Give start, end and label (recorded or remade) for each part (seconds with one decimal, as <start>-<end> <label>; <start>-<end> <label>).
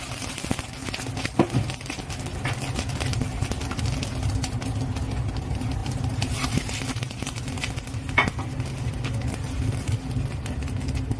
0.0-3.1 recorded; 3.1-3.8 remade; 3.8-5.8 recorded; 5.8-7.6 remade; 7.6-11.2 recorded